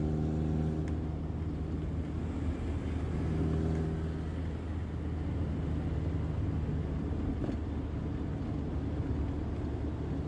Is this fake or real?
real